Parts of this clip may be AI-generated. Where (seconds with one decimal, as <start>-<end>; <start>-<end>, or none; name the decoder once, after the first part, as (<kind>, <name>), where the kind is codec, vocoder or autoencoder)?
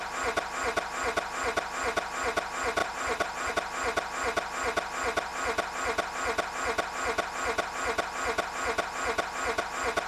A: 2.8-3.5 (vocoder, BigVGAN v2)